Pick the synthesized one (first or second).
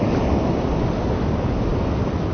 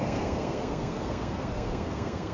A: second